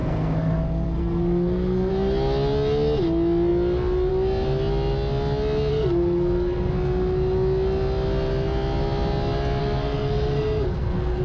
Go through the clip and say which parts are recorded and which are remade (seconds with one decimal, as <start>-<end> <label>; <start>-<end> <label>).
0.0-1.9 remade; 1.9-5.7 recorded; 5.7-6.7 remade; 6.7-9.6 recorded; 9.6-11.2 remade